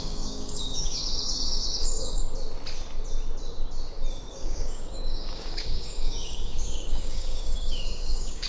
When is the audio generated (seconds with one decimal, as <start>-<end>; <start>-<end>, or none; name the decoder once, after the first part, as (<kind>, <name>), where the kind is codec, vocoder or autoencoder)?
0.0-2.2 (codec, DAC); 4.3-8.5

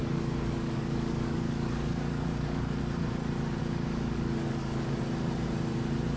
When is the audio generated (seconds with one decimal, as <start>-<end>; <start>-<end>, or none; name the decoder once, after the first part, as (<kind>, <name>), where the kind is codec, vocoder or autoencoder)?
0.0-2.8 (codec, DAC); 3.6-5.0

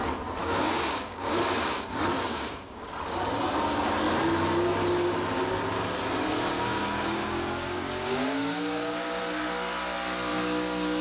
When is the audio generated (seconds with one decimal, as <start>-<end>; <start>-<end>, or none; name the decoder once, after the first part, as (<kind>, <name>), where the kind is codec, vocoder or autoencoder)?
0.4-2.9 (codec, DAC); 6.5-9.2

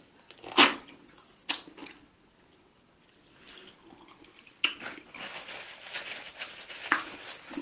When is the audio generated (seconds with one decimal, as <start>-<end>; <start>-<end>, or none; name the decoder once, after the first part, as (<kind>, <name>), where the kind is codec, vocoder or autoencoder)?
none

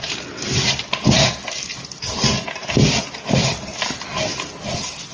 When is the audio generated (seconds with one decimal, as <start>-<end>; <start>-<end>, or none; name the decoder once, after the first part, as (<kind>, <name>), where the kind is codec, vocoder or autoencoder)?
none